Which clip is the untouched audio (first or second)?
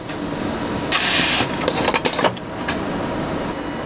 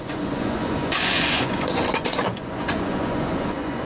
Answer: first